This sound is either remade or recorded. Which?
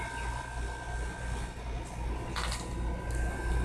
recorded